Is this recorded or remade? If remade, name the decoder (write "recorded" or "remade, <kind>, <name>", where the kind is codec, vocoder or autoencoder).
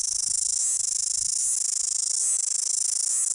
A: recorded